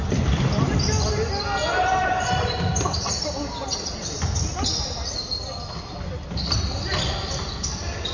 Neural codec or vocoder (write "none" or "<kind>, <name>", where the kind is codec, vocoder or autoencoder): none